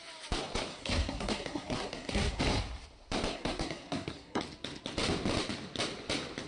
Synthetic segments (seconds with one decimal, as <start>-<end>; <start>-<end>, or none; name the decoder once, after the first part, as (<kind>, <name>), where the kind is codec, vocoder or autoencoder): 0.7-2.4 (codec, SNAC); 3.3-4.4